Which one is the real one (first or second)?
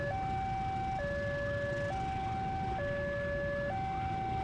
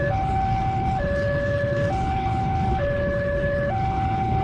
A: first